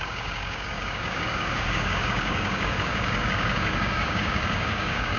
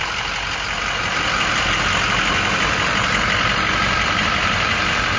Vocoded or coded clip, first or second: first